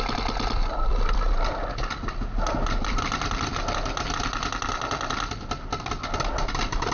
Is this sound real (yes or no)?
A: yes